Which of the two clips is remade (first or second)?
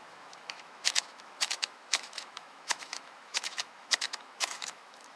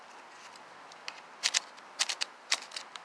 first